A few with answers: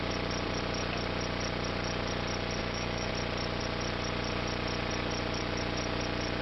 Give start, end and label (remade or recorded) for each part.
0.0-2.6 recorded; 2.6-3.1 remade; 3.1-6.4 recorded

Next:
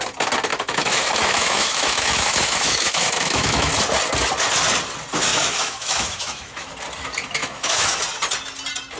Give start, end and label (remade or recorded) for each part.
0.0-0.5 recorded; 0.5-3.7 remade; 3.7-5.3 recorded; 5.3-6.7 remade; 6.7-7.4 recorded; 7.4-8.0 remade; 8.0-9.0 recorded

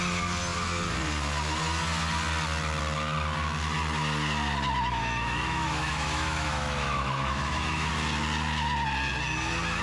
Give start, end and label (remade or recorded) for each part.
0.0-5.0 recorded; 5.0-7.9 remade; 7.9-9.8 recorded

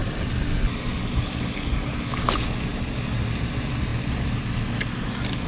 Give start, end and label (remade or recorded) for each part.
0.0-5.5 recorded